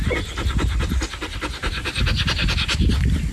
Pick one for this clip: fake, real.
real